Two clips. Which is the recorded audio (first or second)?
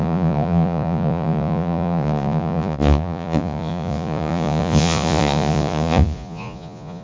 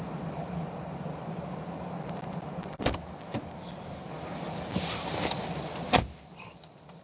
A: second